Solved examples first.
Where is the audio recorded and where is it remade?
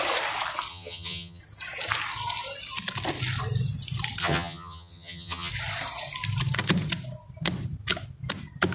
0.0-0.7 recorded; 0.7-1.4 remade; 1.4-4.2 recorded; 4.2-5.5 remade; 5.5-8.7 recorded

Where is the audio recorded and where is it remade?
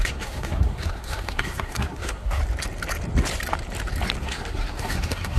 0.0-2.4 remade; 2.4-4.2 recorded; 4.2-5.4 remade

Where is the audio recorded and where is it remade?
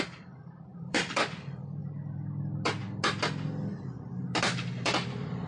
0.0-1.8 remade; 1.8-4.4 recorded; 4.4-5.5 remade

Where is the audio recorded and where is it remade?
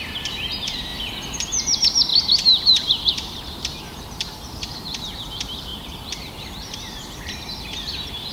0.0-0.9 remade; 0.9-1.4 recorded; 1.4-8.3 remade